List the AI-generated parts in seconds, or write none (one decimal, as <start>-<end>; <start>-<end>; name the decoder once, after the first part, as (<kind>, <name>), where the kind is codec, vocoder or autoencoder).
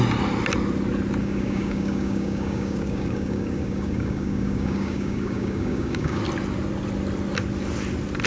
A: 1.2-6.2 (codec, DAC)